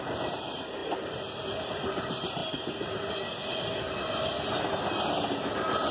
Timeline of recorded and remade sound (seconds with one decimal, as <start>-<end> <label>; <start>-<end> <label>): 0.0-5.9 recorded